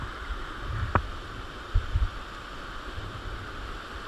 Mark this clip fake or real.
real